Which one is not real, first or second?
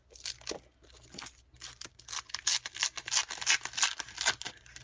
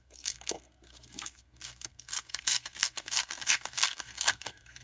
second